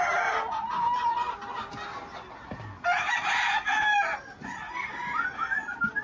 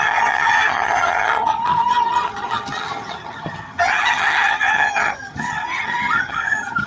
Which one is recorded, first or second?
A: first